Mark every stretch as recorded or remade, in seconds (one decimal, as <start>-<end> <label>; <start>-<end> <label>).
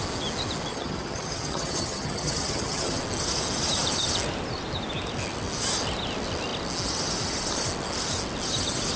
0.0-0.7 recorded; 0.7-3.0 remade; 3.0-9.0 recorded